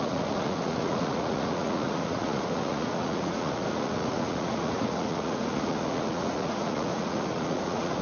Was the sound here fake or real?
fake